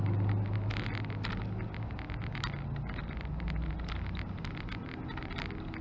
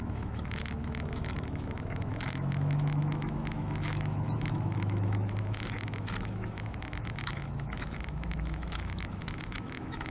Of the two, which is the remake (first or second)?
second